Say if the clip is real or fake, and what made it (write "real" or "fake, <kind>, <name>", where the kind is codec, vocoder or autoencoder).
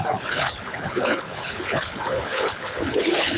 fake, codec, HILCodec